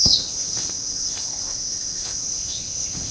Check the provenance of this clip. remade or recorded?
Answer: remade